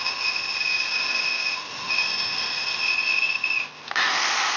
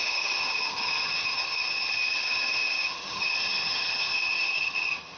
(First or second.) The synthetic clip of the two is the second